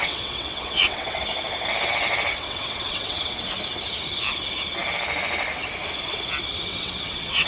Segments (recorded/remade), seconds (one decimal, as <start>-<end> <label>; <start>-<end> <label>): 0.0-1.2 remade; 1.2-2.3 recorded; 2.3-3.5 remade; 3.5-6.7 recorded; 6.7-7.5 remade